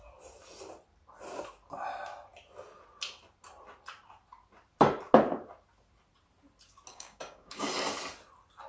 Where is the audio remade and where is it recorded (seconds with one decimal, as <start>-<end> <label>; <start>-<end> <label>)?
0.0-6.9 recorded; 6.9-7.7 remade; 7.7-8.7 recorded